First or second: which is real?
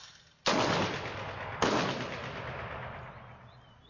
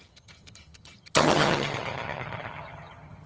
first